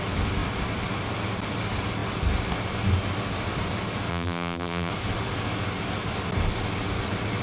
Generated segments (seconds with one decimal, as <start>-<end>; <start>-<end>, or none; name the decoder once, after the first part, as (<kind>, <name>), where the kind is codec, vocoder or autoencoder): 4.1-4.9 (vocoder, BigVGAN v2)